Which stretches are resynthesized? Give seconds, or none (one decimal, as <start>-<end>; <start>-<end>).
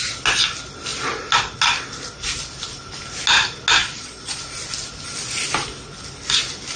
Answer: 3.8-4.4